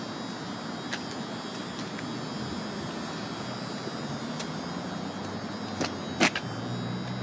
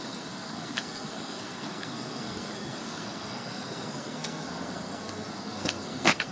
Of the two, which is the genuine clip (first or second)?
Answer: first